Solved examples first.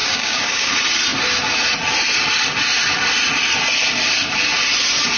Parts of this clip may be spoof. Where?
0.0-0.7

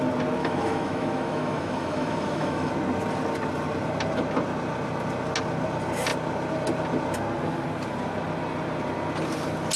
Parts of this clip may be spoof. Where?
0.4-2.7